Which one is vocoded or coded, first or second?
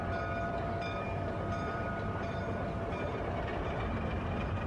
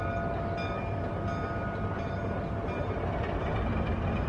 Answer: first